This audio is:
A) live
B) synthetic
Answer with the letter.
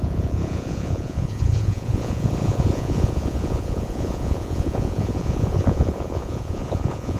B